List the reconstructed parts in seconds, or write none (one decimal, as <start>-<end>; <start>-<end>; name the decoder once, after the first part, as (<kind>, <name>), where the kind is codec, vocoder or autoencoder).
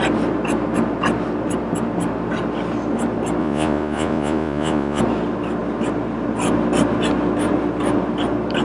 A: 3.4-5.0 (vocoder, Vocos)